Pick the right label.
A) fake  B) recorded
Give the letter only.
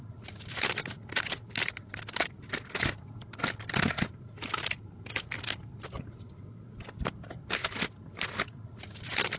B